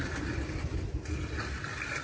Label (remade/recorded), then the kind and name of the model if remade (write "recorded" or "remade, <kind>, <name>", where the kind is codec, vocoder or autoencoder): recorded